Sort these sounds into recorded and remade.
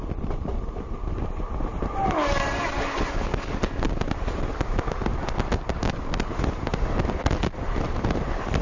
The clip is recorded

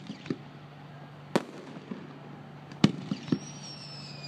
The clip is recorded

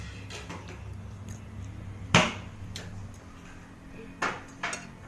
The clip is recorded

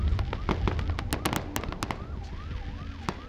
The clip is recorded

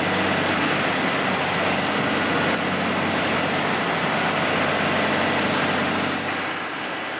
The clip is recorded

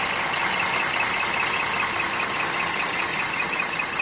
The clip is recorded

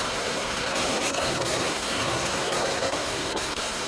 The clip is remade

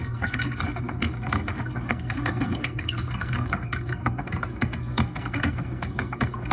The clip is remade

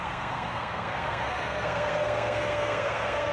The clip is remade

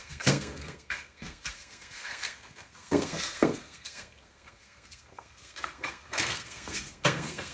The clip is remade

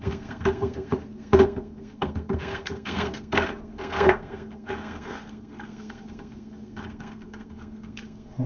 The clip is remade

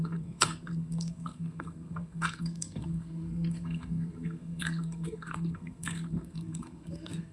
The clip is remade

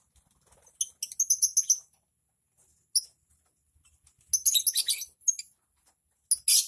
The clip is recorded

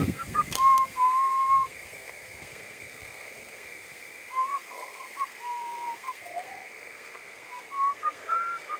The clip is remade